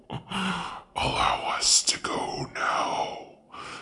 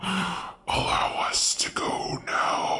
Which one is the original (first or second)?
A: first